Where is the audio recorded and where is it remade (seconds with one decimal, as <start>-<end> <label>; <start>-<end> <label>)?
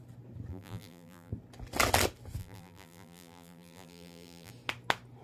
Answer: 0.0-0.5 recorded; 0.5-1.3 remade; 1.3-2.4 recorded; 2.4-4.5 remade; 4.5-5.2 recorded